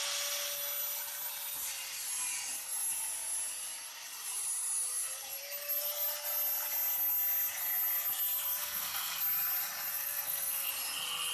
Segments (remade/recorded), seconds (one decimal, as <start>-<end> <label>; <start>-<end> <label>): 0.0-8.6 recorded; 8.6-9.2 remade; 9.2-9.9 recorded; 9.9-10.7 remade; 10.7-11.3 recorded